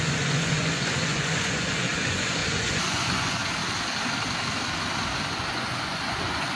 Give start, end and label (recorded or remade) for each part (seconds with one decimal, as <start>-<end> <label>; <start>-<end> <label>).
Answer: 0.0-3.4 remade; 3.4-5.4 recorded; 5.4-6.6 remade